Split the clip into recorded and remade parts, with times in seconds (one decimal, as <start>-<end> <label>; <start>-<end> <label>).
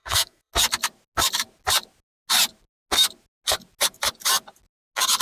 0.0-0.5 remade; 0.5-5.2 recorded